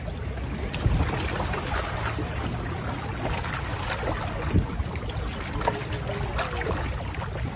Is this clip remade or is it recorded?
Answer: recorded